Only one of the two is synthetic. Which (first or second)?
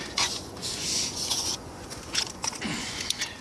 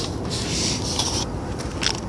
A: first